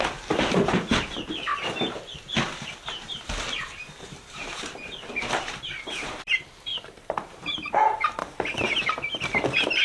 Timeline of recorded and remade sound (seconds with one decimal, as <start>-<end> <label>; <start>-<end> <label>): 0.0-8.2 remade; 8.2-8.9 recorded; 8.9-9.8 remade